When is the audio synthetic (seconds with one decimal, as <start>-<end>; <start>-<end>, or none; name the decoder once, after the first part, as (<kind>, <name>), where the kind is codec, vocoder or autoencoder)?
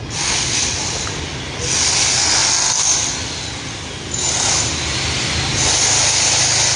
none